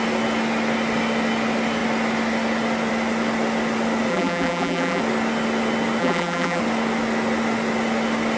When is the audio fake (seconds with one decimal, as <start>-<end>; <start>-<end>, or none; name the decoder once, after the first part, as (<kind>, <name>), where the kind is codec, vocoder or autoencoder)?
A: 4.1-5.0 (vocoder, BigVGAN v2); 6.0-6.6